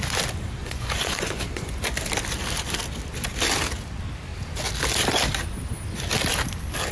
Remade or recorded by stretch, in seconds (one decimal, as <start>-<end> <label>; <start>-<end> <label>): 0.0-0.6 recorded; 0.6-1.8 remade; 1.8-6.9 recorded